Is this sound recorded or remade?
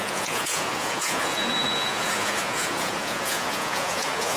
remade